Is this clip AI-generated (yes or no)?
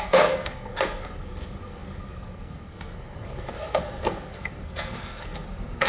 yes